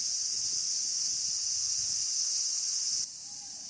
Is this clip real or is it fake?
real